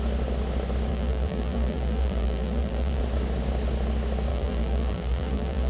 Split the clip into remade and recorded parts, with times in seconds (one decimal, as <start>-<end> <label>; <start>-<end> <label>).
0.0-0.9 recorded; 0.9-3.0 remade; 3.0-4.3 recorded; 4.3-5.7 remade